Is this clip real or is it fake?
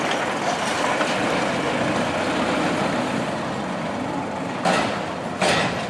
real